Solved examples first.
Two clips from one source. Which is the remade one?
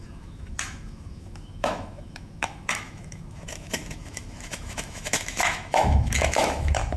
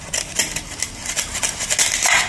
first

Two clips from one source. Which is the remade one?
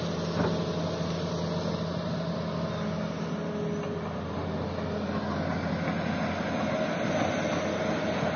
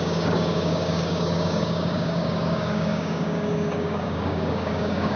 second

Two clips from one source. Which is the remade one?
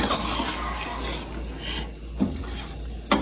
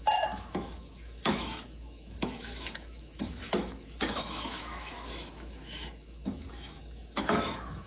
second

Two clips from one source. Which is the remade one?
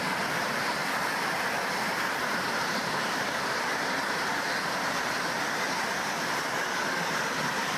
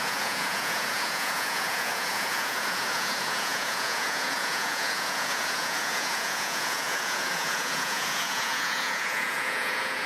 second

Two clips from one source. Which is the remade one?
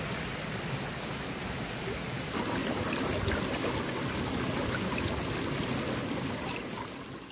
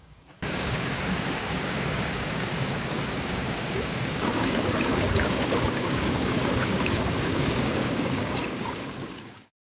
second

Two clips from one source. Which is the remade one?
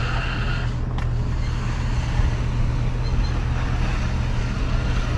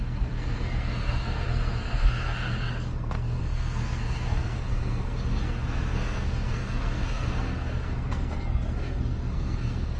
second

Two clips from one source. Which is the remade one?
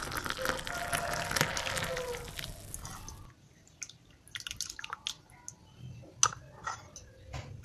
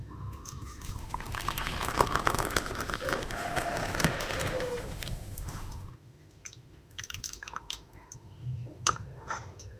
second